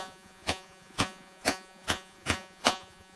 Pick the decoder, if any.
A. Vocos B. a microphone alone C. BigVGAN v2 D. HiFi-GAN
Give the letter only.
A